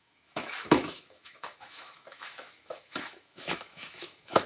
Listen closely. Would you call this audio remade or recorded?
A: remade